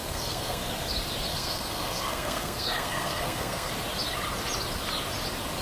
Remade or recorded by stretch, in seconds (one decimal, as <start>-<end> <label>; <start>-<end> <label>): 0.0-0.7 remade; 0.7-1.3 recorded; 1.3-3.7 remade; 3.7-5.6 recorded